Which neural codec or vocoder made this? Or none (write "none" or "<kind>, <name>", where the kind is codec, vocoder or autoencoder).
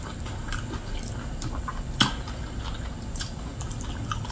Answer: none